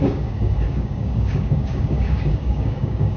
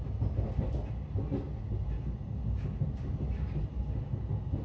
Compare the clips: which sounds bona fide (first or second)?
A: second